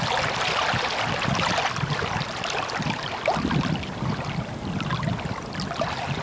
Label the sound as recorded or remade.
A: recorded